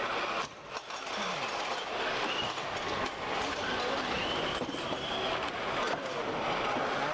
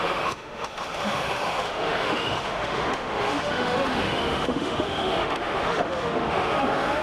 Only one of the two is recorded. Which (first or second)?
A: first